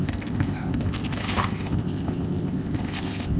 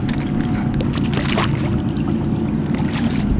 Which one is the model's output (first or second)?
first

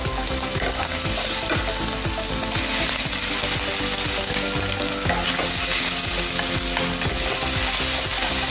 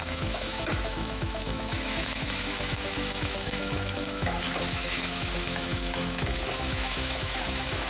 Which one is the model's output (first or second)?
second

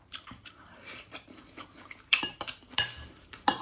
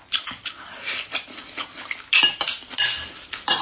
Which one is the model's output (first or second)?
first